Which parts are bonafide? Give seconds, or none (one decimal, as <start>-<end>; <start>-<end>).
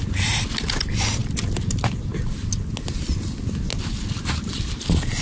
0.0-5.2